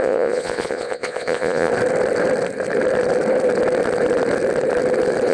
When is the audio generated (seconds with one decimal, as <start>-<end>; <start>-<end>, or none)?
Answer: 0.0-1.7